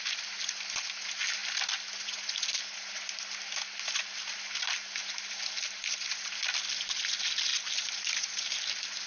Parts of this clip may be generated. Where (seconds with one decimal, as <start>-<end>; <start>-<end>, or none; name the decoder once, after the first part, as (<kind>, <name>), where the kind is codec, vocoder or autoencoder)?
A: none